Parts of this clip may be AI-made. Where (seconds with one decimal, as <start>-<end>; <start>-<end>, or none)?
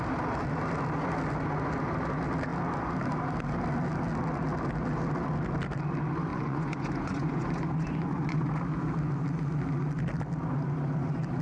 6.3-8.6